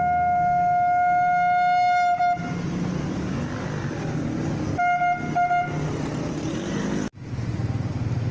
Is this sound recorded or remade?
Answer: recorded